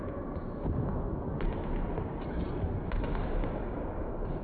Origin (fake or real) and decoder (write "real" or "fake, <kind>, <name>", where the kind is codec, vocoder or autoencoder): real